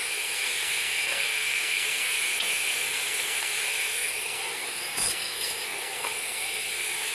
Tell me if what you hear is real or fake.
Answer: fake